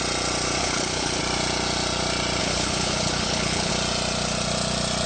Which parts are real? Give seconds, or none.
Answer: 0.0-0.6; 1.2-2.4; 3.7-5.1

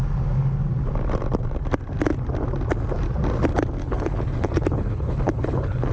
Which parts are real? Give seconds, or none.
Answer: 0.0-3.8